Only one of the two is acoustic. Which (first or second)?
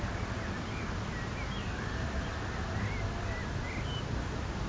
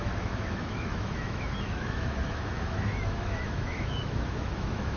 first